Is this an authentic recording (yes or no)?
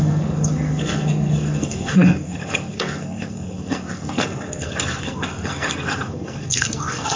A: no